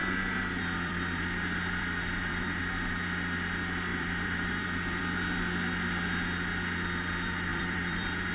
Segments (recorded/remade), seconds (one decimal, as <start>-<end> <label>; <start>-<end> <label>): 0.0-2.6 remade; 2.6-3.9 recorded; 3.9-5.0 remade; 5.0-7.5 recorded; 7.5-8.3 remade